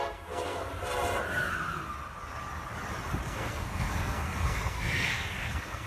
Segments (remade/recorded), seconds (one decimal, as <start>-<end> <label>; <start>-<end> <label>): 0.0-0.6 remade; 0.6-3.2 recorded; 3.2-5.9 remade